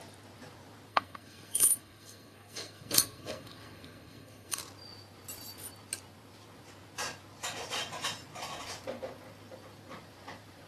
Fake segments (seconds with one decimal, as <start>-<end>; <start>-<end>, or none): 0.9-4.6